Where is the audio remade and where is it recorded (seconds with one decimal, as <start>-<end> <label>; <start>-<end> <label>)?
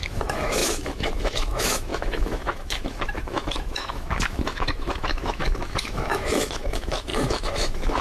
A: 0.0-8.0 remade